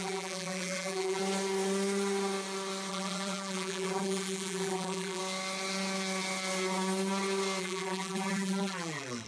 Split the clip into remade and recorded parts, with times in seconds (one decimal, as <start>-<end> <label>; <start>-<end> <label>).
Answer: 0.0-1.2 remade; 1.2-2.9 recorded; 2.9-5.2 remade; 5.2-7.6 recorded; 7.6-9.3 remade